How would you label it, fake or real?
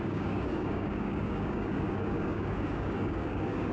fake